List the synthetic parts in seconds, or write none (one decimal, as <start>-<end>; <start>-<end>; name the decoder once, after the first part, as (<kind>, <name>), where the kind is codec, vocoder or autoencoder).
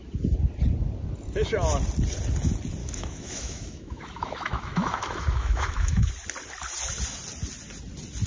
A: 2.8-6.1 (autoencoder, DAC-VAE)